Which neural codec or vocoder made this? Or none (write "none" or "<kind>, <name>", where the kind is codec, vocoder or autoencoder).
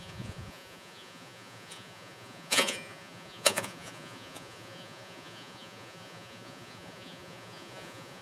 vocoder, Vocos